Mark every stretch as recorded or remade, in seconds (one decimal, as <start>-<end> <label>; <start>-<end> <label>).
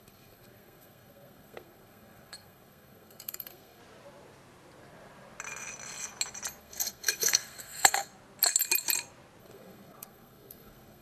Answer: 0.0-3.8 remade; 3.8-6.6 recorded; 6.6-8.1 remade; 8.1-9.4 recorded; 9.4-11.0 remade